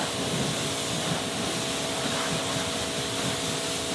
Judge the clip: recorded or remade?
recorded